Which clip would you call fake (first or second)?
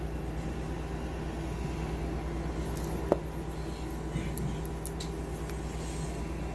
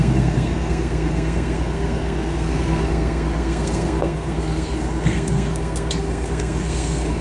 second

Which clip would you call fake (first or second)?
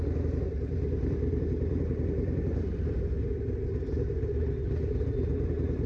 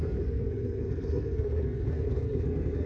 second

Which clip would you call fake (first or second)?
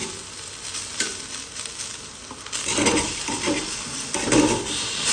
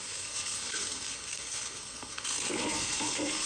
second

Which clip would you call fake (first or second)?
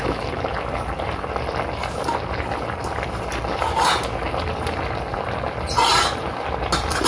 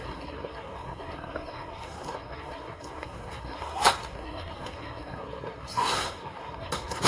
second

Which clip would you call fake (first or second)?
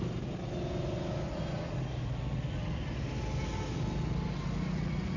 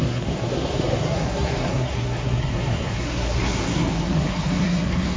second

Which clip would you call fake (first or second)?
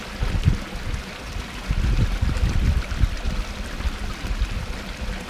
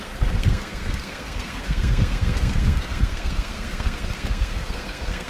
second